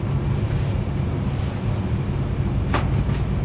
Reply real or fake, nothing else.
real